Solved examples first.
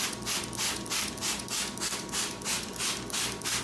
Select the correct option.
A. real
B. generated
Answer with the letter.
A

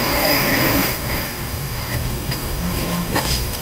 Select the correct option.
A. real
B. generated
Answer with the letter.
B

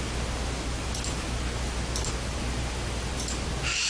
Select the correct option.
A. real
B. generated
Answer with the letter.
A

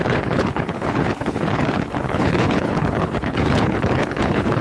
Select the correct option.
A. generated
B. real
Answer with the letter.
A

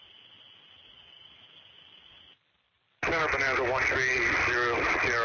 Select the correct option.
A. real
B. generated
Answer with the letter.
A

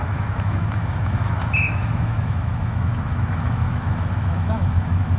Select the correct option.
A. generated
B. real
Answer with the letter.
A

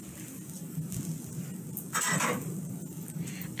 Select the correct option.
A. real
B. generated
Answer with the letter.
A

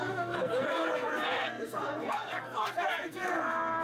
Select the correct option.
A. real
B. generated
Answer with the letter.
B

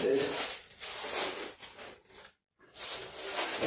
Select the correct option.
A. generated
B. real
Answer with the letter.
B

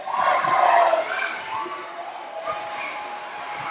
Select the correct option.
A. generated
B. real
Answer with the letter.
B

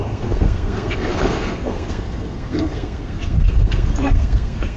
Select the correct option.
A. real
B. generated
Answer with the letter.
B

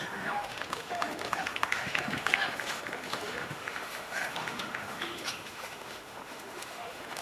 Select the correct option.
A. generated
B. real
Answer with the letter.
A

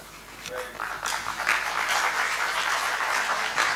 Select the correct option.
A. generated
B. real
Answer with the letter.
A